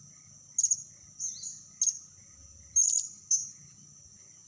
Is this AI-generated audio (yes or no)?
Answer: no